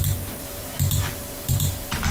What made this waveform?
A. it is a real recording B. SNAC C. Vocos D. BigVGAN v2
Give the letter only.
D